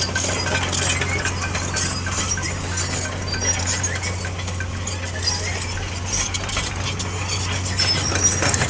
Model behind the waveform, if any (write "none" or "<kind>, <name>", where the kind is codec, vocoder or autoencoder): none